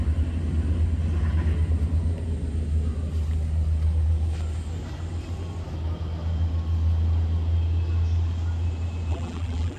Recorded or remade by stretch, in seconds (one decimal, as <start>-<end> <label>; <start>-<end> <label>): 0.0-9.1 recorded; 9.1-9.8 remade

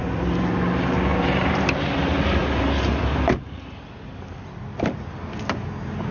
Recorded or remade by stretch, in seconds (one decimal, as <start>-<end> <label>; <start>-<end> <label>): 0.0-1.1 recorded; 1.1-1.8 remade; 1.8-6.1 recorded